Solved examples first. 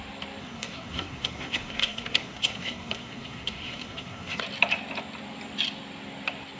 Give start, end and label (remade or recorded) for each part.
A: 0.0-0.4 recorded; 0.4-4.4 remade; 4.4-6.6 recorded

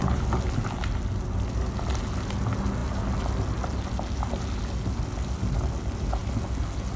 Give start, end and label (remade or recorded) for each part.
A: 0.0-7.0 recorded